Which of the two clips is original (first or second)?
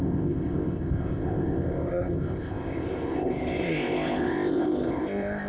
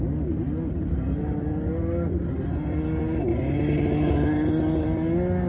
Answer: second